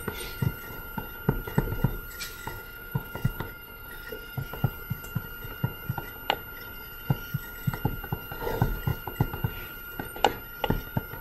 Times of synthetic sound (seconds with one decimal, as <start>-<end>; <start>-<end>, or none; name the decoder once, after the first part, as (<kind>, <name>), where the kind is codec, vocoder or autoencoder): 2.2-4.5 (autoencoder, DAC-VAE)